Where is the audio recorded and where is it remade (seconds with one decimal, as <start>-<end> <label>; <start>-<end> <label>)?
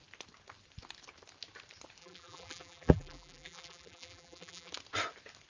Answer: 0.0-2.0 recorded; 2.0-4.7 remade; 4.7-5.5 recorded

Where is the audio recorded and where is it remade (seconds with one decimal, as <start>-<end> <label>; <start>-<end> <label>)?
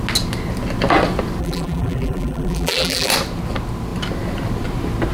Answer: 0.0-1.4 recorded; 1.4-3.1 remade; 3.1-5.1 recorded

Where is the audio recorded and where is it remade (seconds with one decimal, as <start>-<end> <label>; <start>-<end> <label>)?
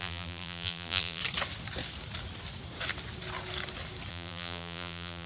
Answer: 0.0-1.2 remade; 1.2-4.1 recorded; 4.1-5.3 remade